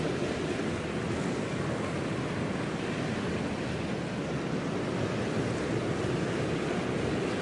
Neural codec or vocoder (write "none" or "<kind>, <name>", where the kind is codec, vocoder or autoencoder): none